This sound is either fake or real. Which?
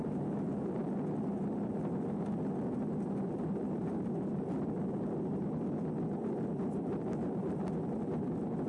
real